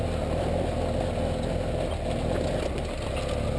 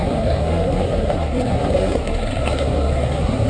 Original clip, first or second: first